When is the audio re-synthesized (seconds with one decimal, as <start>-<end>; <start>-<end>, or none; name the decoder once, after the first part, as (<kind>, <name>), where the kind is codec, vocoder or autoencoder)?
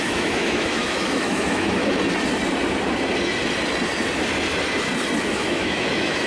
0.0-1.8 (autoencoder, DAC-VAE); 5.2-6.3